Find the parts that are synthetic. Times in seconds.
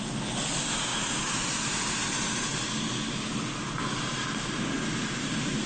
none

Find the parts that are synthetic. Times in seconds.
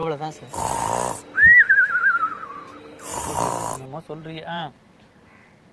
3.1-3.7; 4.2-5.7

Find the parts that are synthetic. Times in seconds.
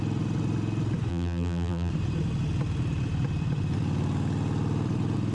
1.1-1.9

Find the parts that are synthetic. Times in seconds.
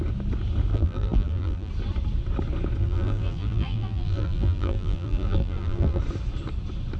0.7-1.7; 2.8-6.0